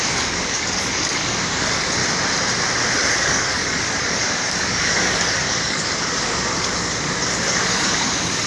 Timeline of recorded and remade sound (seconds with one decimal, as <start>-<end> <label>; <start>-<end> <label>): 0.0-2.0 remade; 2.0-3.1 recorded; 3.1-8.5 remade